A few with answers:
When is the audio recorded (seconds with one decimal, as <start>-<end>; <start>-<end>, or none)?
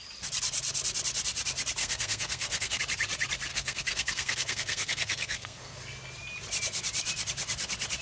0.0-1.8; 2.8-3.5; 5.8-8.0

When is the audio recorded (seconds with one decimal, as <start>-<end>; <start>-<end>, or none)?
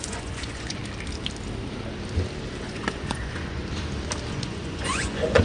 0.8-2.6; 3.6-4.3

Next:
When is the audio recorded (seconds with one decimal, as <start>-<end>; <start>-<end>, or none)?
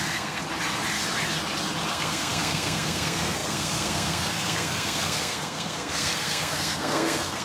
0.4-1.9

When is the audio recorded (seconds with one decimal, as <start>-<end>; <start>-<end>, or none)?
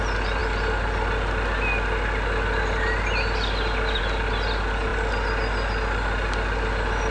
0.0-7.1